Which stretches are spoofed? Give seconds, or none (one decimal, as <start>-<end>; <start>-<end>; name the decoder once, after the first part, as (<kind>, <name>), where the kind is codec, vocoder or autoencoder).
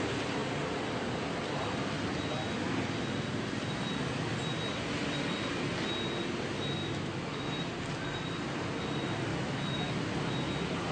6.8-7.5 (autoencoder, DAC-VAE); 9.3-9.8